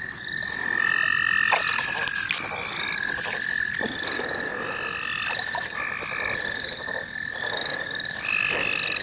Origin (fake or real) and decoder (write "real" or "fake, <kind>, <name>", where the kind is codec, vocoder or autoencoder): real